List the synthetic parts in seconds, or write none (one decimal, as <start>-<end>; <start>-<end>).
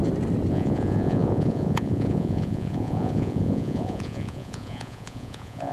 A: 0.5-5.7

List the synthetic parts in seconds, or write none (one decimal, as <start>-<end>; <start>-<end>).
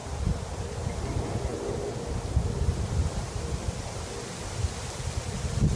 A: none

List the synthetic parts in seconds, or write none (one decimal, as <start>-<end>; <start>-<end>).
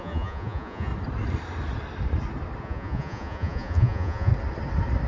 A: 0.0-0.9; 2.6-4.3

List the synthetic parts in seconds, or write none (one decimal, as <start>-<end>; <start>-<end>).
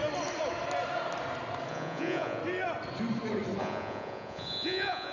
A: 1.7-2.4; 3.6-5.1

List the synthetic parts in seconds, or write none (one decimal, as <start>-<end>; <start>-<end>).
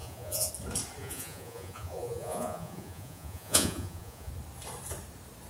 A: 0.0-0.5; 1.0-4.3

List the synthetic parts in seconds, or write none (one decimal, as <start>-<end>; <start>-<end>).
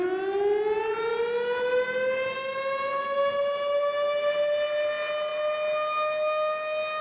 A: none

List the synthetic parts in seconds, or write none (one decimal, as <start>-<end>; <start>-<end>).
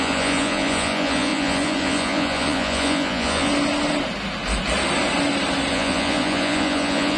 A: 0.0-3.5; 5.7-7.2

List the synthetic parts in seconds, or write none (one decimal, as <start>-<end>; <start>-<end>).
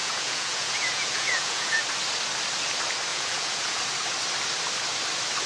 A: 0.0-1.8; 3.1-3.8